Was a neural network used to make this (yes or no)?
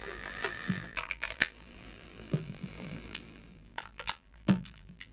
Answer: yes